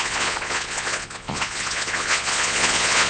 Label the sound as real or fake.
fake